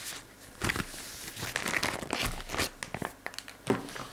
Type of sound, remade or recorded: recorded